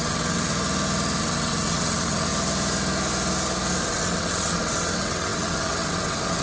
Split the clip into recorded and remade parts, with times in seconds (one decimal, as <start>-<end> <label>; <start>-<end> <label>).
0.0-0.5 remade; 0.5-1.2 recorded; 1.2-2.3 remade; 2.3-3.8 recorded; 3.8-6.4 remade